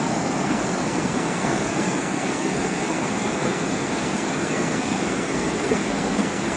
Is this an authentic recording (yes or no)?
no